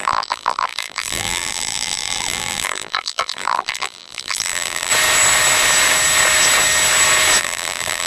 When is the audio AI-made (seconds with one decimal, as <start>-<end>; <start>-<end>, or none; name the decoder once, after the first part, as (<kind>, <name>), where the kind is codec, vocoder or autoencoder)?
0.0-4.9 (vocoder, BigVGAN v2); 7.4-8.1